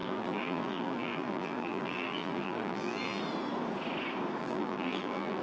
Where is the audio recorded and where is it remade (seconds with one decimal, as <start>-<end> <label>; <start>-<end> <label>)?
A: 0.0-3.2 remade; 3.2-4.4 recorded; 4.4-5.4 remade